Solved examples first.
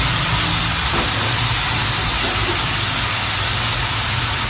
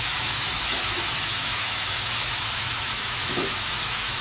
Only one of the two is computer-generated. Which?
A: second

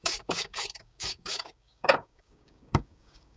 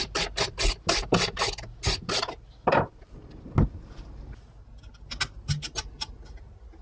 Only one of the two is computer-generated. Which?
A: first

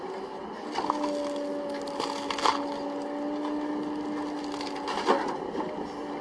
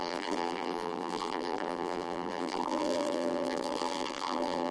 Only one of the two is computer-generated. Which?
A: second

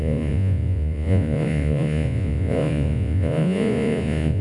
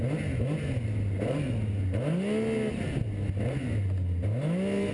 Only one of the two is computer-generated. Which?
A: first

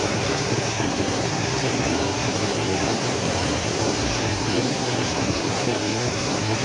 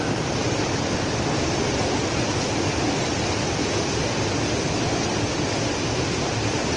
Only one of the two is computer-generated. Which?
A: first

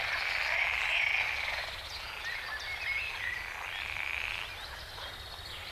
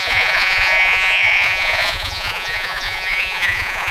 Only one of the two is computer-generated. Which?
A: second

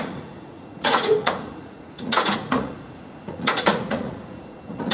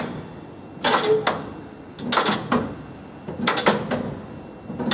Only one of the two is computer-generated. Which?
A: first